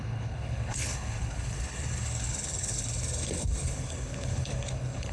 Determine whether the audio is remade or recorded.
remade